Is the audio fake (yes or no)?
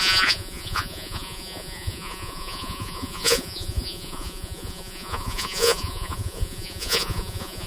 yes